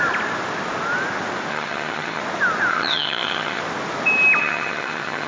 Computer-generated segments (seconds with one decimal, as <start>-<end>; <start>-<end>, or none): 1.5-2.2; 2.7-3.6; 4.4-5.3